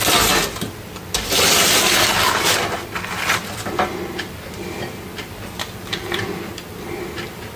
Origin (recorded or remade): recorded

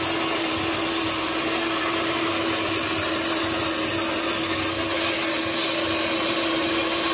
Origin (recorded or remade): recorded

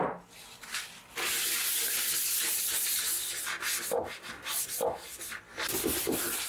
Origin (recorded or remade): recorded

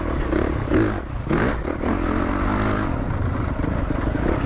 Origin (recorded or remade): recorded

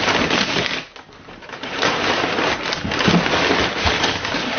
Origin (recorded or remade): recorded